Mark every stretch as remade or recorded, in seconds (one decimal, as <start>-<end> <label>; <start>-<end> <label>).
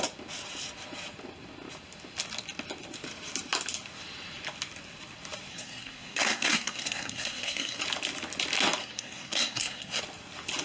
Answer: 0.0-5.5 recorded; 5.5-7.8 remade; 7.8-8.8 recorded; 8.8-10.0 remade; 10.0-10.6 recorded